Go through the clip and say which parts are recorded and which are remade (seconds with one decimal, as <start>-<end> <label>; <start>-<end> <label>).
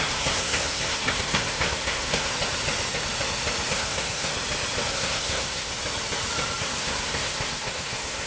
0.0-2.3 remade; 2.3-3.7 recorded; 3.7-4.3 remade; 4.3-4.9 recorded; 4.9-5.7 remade; 5.7-6.6 recorded; 6.6-8.3 remade